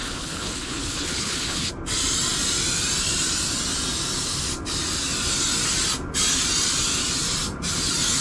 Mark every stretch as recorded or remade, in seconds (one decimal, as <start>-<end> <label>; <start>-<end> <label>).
0.0-1.7 remade; 1.7-8.2 recorded